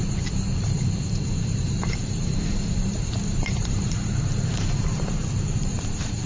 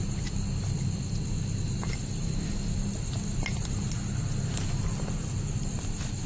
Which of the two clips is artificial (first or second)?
first